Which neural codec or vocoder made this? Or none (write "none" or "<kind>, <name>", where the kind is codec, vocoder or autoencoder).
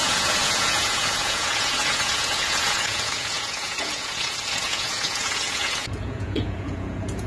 vocoder, Vocos